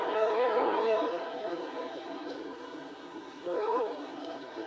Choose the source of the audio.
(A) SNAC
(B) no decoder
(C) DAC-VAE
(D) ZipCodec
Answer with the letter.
A